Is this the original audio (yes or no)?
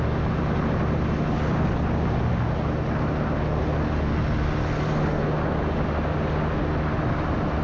yes